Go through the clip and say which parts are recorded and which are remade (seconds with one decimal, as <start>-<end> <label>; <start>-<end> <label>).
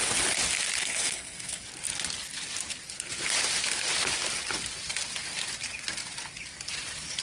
0.0-0.8 recorded; 0.8-1.6 remade; 1.6-7.2 recorded